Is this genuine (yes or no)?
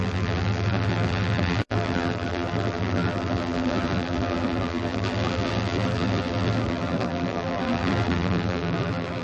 no